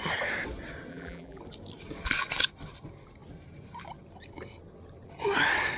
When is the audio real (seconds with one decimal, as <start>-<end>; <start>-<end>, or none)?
0.0-0.9; 1.4-5.8